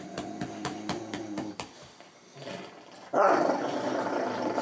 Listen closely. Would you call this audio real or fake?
real